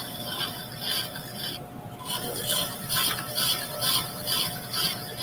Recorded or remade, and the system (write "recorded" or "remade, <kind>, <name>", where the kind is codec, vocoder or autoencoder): remade, vocoder, BigVGAN v2